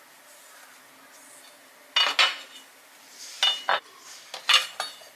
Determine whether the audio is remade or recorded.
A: recorded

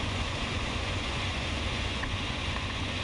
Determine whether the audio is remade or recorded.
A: remade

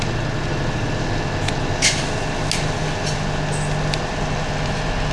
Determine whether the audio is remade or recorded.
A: recorded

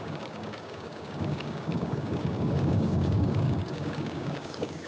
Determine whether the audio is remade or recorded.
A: remade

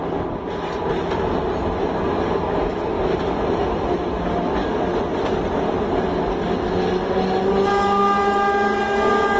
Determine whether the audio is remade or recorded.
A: recorded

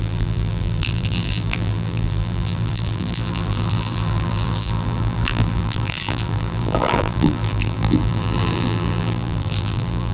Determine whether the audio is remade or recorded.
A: remade